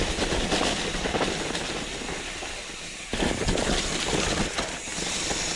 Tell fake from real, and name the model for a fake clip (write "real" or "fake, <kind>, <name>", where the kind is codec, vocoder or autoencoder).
real